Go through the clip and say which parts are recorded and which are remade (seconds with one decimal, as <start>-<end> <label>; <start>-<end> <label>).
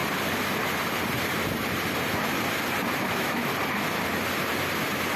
0.0-3.1 recorded; 3.1-3.5 remade; 3.5-5.2 recorded